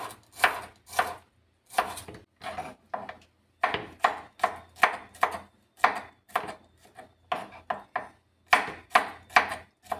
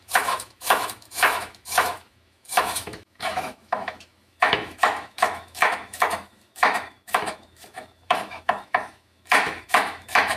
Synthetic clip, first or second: second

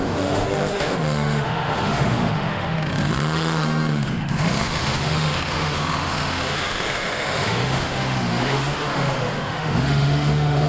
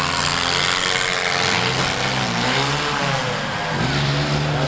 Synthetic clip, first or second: first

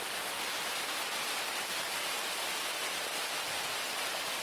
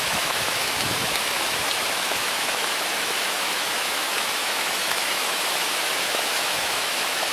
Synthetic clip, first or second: second